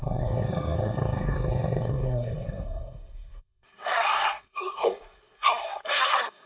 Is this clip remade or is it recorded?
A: remade